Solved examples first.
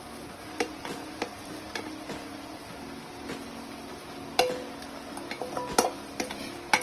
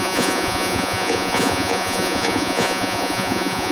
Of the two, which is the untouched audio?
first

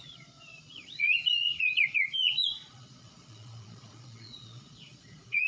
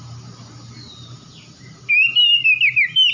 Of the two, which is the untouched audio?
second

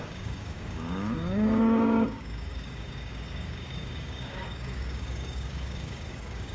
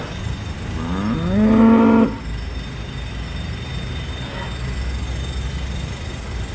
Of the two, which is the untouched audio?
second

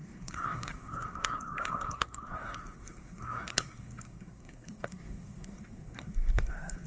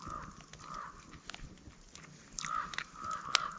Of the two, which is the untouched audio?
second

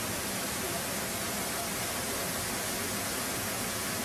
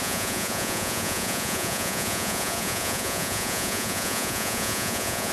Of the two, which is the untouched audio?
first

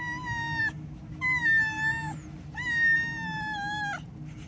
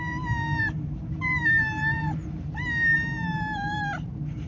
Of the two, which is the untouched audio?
first